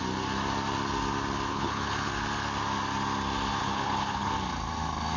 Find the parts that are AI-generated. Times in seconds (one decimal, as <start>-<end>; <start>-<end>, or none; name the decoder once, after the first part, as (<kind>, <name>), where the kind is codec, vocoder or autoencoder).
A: 1.5-2.1 (codec, HILCodec); 3.6-4.3